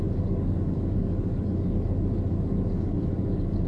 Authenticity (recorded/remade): remade